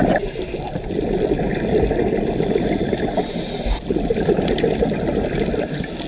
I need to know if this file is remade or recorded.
recorded